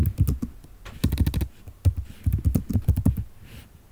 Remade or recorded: recorded